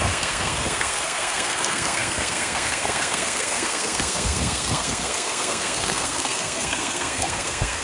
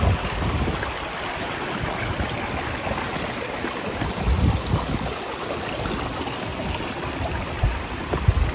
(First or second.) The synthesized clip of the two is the first